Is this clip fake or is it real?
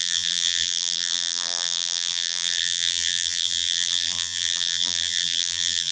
fake